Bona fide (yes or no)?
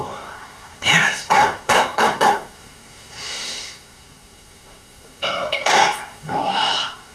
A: no